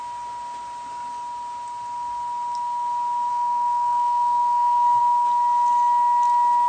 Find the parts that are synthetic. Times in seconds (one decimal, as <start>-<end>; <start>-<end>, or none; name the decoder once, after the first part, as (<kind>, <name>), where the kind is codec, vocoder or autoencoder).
3.3-5.0 (codec, SNAC)